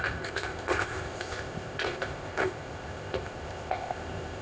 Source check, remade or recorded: remade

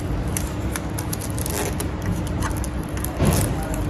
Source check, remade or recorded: recorded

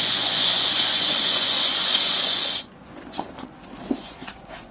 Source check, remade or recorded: remade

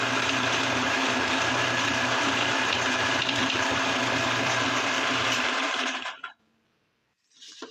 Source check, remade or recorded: remade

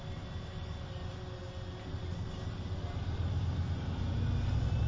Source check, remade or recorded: recorded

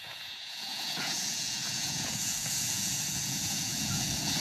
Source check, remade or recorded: remade